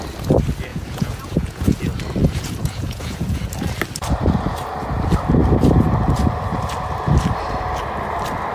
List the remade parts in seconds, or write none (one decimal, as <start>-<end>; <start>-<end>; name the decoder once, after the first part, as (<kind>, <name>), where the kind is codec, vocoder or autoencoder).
0.7-1.8 (vocoder, Vocos); 2.2-3.4